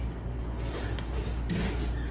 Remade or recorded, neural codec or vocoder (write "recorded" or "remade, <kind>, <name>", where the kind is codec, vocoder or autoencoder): recorded